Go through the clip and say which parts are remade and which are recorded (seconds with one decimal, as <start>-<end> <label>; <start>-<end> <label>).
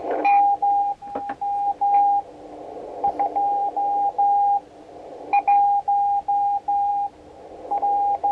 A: 0.0-8.3 recorded